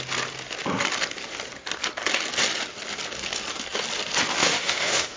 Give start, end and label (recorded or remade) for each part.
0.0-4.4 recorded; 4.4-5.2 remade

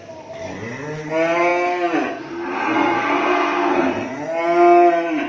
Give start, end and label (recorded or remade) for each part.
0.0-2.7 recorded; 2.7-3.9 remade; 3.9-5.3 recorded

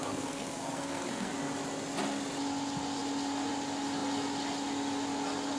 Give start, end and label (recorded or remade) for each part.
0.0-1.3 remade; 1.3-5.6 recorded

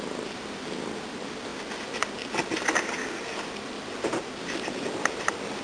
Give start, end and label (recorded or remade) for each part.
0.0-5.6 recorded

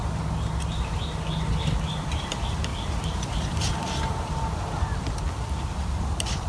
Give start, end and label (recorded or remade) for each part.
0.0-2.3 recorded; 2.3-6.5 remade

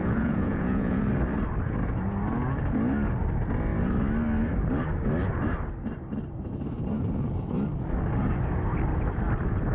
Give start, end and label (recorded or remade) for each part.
0.0-1.1 remade; 1.1-9.7 recorded